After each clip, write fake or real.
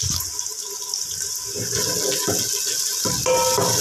real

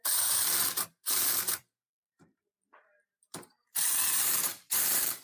fake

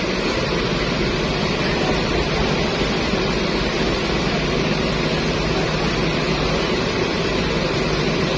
fake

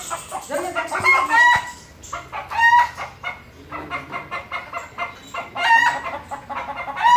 real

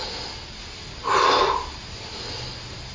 real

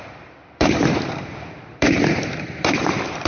fake